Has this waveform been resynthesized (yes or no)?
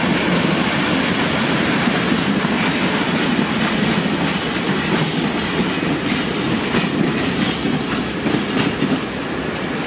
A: no